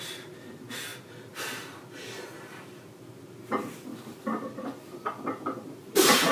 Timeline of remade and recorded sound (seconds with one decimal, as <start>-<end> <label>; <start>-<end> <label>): 0.0-6.3 recorded